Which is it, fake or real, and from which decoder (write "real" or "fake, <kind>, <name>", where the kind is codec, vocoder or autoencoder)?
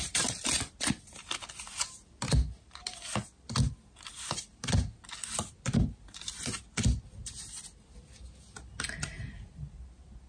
real